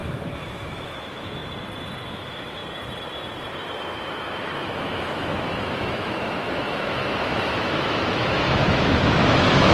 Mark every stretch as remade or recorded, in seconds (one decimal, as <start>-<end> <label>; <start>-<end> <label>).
0.0-1.4 remade; 1.4-2.1 recorded; 2.1-2.6 remade; 2.6-3.8 recorded; 3.8-9.7 remade